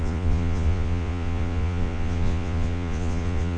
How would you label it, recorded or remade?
remade